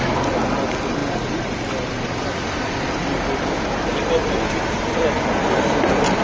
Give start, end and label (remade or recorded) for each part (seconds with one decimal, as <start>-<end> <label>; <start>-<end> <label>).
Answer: 0.0-6.2 recorded

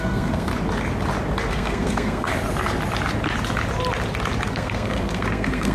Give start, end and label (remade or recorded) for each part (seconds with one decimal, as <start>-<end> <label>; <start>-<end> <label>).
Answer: 0.0-0.5 remade; 0.5-1.5 recorded; 1.5-2.3 remade; 2.3-4.5 recorded; 4.5-5.7 remade

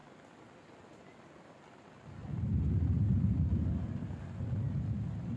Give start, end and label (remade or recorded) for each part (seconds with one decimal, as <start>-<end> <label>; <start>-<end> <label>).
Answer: 0.0-5.4 recorded

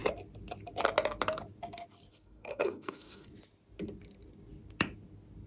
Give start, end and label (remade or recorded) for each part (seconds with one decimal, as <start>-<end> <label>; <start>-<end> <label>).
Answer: 0.0-2.1 recorded; 2.1-3.3 remade; 3.3-5.5 recorded

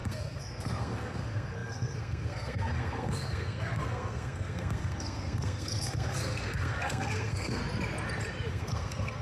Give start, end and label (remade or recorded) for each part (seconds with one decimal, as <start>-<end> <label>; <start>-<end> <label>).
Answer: 0.0-7.6 remade; 7.6-8.5 recorded; 8.5-9.2 remade

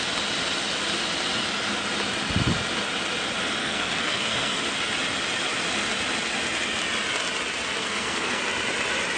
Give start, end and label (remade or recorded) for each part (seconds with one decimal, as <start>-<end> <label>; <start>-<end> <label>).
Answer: 0.0-3.6 recorded; 3.6-4.6 remade; 4.6-7.8 recorded; 7.8-8.4 remade; 8.4-9.2 recorded